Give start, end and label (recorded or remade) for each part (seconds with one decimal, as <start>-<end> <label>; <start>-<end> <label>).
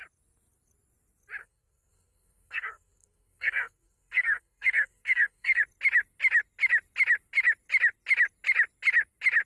0.0-1.4 recorded; 1.4-5.6 remade; 5.6-9.5 recorded